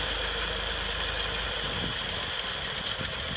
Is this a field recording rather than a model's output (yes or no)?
yes